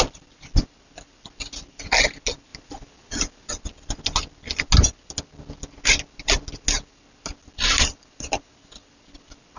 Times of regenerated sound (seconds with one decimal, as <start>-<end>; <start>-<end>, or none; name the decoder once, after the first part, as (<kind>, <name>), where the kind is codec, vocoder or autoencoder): none